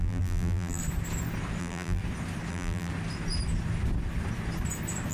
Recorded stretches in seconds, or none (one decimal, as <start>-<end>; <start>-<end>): 0.8-1.6; 2.0-2.5; 2.9-5.1